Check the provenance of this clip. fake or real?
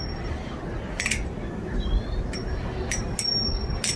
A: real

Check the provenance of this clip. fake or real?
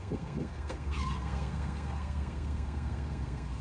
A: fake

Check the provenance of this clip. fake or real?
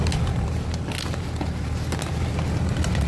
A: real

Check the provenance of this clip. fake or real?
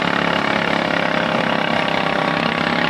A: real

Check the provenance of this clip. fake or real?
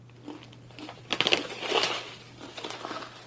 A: real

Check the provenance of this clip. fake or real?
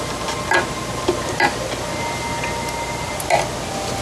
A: real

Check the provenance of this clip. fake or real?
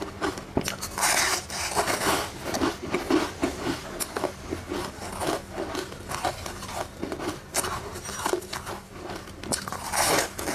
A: real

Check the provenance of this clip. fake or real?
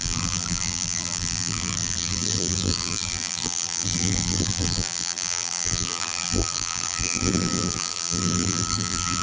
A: fake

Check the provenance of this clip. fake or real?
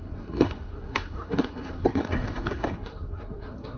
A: fake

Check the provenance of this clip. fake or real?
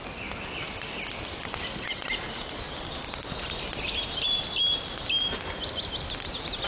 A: real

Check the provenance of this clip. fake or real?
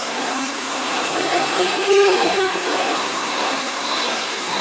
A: fake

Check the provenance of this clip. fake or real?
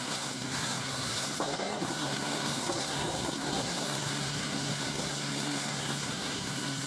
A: fake